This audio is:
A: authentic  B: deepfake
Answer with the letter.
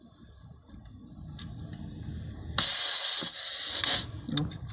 A